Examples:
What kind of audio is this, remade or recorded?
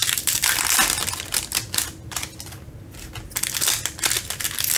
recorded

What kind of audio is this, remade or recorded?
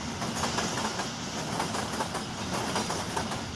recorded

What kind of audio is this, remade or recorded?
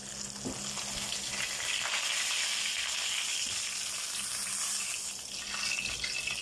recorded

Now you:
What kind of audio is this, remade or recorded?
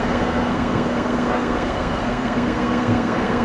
remade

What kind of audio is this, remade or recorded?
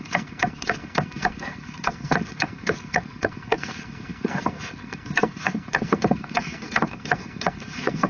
remade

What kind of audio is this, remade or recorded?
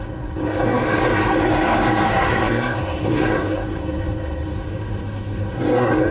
remade